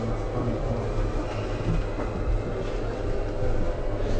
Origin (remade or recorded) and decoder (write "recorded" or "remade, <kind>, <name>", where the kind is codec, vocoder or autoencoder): recorded